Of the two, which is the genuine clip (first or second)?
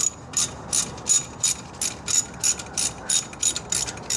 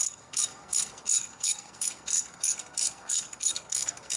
first